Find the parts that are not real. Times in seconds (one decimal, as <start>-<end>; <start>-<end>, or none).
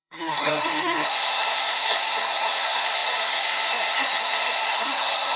0.0-5.4